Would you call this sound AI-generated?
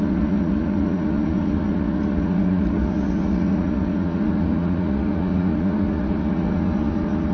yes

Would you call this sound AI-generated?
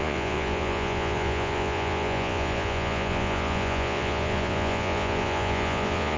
yes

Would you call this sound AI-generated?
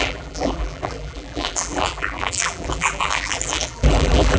yes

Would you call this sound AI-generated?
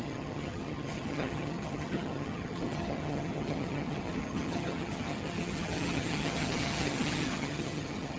yes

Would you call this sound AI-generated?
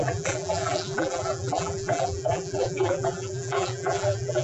yes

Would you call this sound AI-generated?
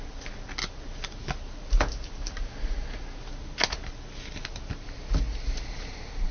no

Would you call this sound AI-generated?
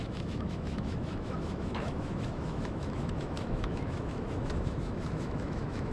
yes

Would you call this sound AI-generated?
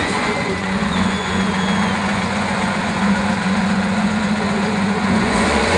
yes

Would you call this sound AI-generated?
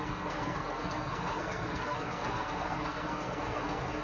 yes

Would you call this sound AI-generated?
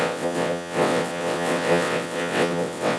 yes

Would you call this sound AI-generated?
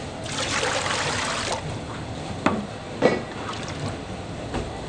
no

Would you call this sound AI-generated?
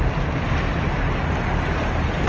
no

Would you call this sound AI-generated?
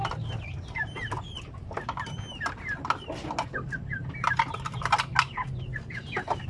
no